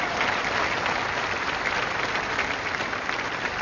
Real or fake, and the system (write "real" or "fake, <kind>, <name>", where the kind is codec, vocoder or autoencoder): fake, vocoder, BigVGAN v2